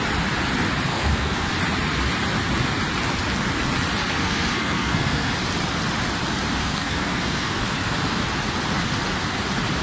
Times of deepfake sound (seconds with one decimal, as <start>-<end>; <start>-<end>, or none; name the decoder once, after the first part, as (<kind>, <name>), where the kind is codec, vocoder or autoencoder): 0.9-1.5 (codec, SNAC); 4.2-5.3; 6.6-8.2